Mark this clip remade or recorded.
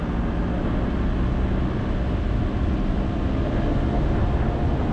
recorded